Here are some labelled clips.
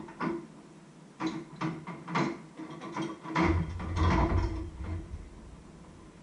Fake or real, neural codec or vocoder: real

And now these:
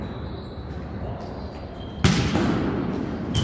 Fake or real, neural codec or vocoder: real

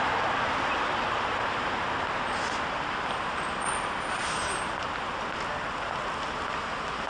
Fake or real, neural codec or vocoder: real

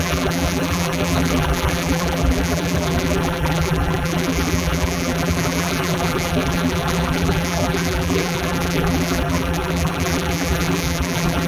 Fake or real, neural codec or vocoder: fake, vocoder, BigVGAN v2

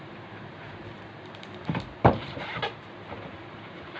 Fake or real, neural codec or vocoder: fake, vocoder, BigVGAN v2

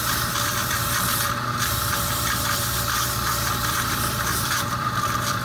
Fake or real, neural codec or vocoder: fake, vocoder, BigVGAN v2